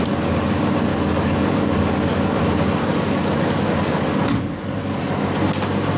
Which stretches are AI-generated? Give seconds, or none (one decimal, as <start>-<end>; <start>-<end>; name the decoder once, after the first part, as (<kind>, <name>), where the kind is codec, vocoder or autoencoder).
0.9-2.4 (codec, DAC); 2.8-5.0